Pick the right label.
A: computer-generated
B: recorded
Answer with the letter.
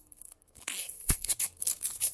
A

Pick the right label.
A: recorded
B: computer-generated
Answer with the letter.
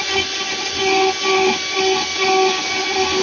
A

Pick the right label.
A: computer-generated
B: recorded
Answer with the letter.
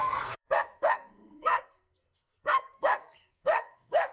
A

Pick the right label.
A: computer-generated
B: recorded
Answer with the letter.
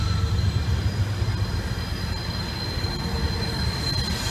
B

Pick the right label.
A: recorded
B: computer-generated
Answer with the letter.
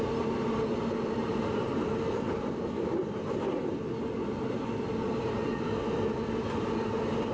A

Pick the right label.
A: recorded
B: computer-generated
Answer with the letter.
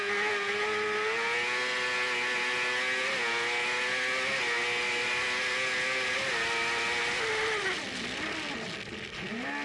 A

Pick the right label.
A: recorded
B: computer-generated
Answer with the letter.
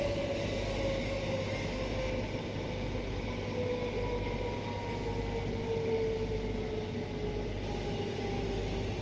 A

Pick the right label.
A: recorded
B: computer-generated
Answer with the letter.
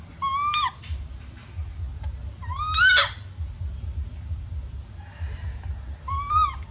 A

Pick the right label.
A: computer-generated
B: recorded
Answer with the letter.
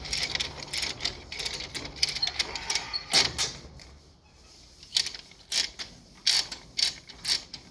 B